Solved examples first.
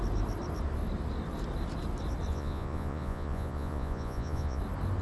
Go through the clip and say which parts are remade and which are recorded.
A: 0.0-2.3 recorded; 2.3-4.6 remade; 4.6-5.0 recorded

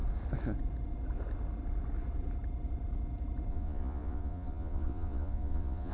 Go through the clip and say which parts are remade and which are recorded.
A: 0.0-3.5 recorded; 3.5-5.9 remade

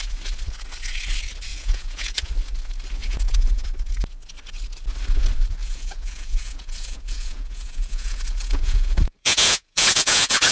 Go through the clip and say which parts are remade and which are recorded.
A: 0.0-1.5 recorded; 1.5-2.3 remade; 2.3-3.0 recorded; 3.0-3.7 remade; 3.7-5.6 recorded; 5.6-10.5 remade

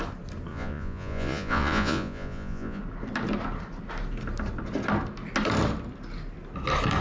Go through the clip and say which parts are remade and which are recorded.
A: 0.0-0.5 recorded; 0.5-2.8 remade; 2.8-7.0 recorded

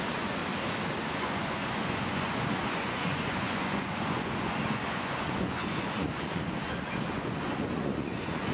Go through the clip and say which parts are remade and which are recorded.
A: 0.0-0.4 remade; 0.4-1.1 recorded; 1.1-8.5 remade